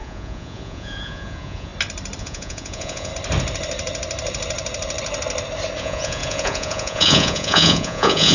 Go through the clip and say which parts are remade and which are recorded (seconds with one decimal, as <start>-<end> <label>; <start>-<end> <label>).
0.0-1.7 remade; 1.7-2.2 recorded; 2.2-3.1 remade; 3.1-5.8 recorded; 5.8-8.3 remade